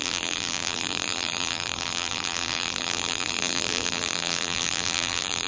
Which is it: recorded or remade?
remade